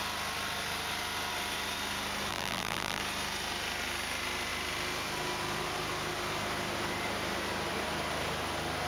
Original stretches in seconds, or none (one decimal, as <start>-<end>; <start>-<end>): 0.0-2.3; 3.0-8.9